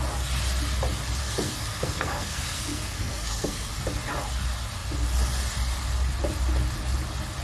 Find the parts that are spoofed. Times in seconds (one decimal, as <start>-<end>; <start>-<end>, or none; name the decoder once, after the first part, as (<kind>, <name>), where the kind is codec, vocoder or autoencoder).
1.2-3.7 (codec, SNAC)